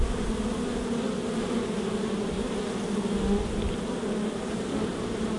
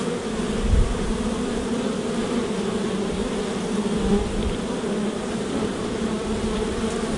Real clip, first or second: first